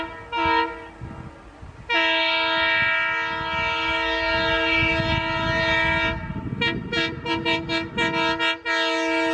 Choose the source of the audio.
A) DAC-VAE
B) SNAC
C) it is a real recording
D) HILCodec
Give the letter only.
C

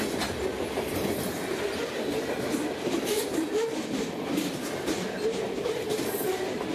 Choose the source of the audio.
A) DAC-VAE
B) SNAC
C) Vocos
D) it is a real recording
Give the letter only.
D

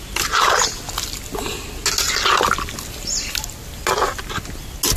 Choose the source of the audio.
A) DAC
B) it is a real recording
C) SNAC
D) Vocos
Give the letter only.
B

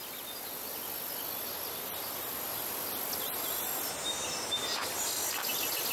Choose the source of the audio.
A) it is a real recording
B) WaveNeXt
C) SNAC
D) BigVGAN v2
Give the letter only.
A